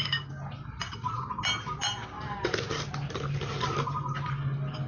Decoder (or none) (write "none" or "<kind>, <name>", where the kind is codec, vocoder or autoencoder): none